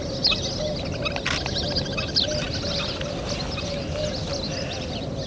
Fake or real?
real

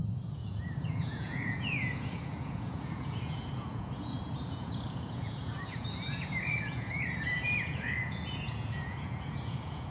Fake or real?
fake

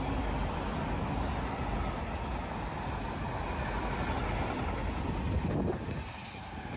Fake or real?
real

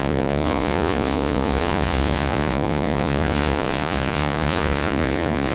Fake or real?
fake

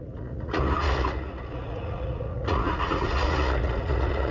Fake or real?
fake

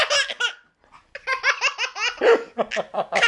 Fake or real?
real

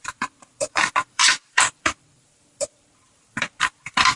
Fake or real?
fake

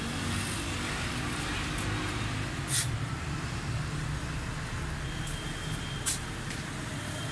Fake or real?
real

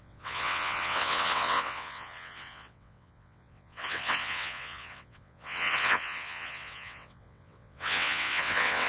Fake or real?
fake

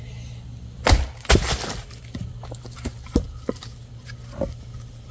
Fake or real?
real